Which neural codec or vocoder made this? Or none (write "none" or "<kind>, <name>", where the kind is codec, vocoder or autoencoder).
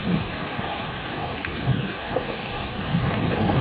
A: codec, DAC